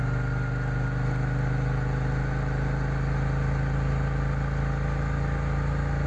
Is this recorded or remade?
recorded